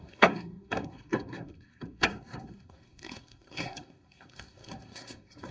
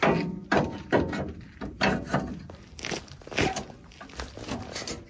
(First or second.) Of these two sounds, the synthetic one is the first